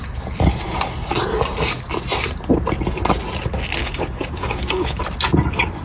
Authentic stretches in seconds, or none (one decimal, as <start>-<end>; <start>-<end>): 0.0-3.8; 5.0-5.8